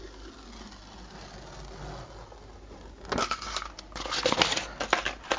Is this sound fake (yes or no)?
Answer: no